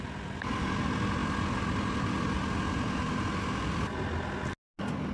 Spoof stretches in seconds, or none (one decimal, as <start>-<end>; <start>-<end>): none